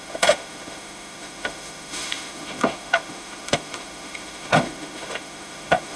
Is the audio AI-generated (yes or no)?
yes